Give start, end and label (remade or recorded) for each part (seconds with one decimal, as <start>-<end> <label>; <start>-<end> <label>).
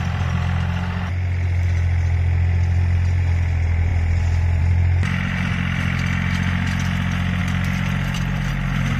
0.0-7.4 recorded; 7.4-8.5 remade; 8.5-9.0 recorded